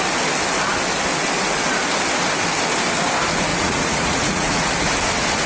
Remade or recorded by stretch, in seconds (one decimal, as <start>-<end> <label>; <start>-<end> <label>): 0.0-3.5 recorded; 3.5-4.7 remade; 4.7-5.5 recorded